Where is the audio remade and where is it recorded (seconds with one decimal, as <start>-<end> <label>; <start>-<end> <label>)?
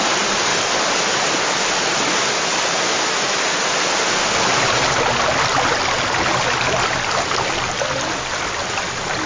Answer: 0.0-9.3 recorded